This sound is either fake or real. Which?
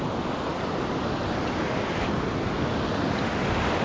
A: real